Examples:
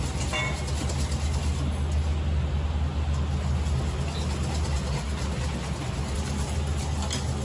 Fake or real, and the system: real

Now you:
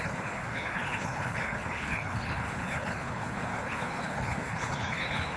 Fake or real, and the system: fake, codec, HILCodec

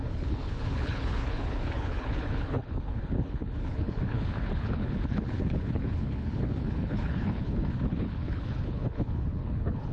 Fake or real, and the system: fake, codec, HILCodec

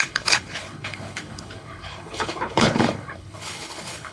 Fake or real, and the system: fake, codec, HILCodec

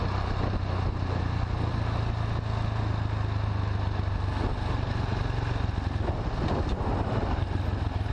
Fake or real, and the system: real